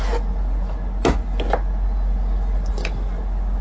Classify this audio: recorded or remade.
recorded